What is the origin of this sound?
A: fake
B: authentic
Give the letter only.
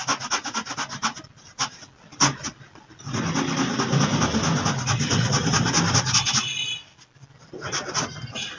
B